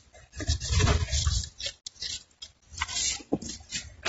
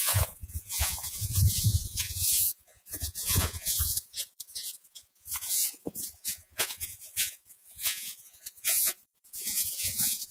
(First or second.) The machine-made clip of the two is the second